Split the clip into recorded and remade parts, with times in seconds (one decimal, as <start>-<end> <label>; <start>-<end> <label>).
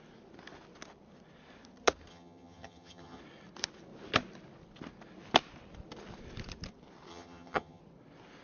0.0-2.1 recorded; 2.1-3.2 remade; 3.2-7.1 recorded; 7.1-7.8 remade; 7.8-8.4 recorded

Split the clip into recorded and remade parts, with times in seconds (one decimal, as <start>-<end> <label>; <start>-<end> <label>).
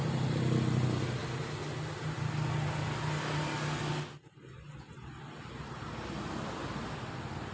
0.0-7.5 recorded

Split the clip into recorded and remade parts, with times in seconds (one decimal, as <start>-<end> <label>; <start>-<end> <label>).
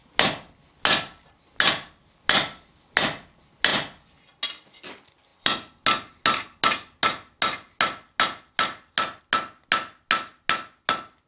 0.0-11.3 recorded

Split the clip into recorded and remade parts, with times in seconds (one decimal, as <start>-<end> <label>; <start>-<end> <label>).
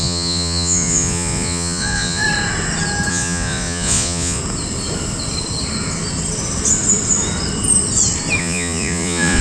0.0-2.2 remade; 2.2-3.1 recorded; 3.1-4.4 remade; 4.4-8.4 recorded; 8.4-9.4 remade